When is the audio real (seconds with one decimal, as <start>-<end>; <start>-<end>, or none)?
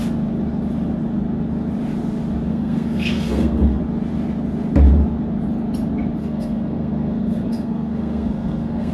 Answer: 0.0-2.5; 3.8-6.2